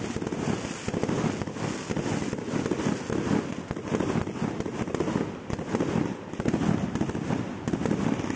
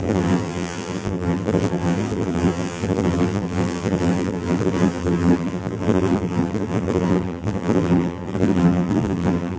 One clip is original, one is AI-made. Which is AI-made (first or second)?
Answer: second